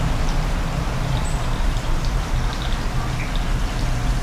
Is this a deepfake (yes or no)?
yes